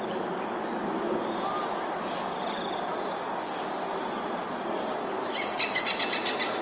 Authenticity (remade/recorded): recorded